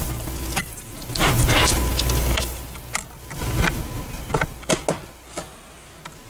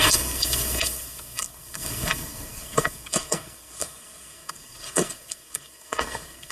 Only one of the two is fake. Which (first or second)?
second